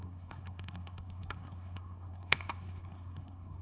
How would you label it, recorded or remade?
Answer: remade